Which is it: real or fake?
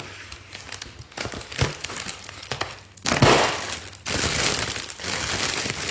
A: real